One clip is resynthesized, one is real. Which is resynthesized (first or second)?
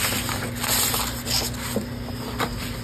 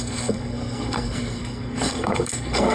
second